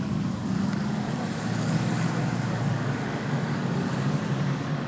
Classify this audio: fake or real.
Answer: fake